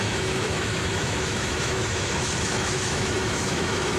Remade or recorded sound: remade